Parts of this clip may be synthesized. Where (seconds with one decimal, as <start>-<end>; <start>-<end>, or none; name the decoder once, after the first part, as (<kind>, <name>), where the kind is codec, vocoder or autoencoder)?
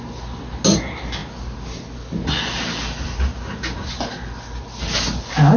none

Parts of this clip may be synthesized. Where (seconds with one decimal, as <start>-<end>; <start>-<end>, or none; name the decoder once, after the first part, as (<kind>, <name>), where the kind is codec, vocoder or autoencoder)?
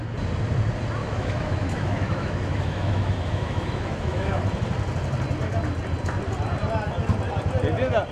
1.0-4.4 (autoencoder, DAC-VAE)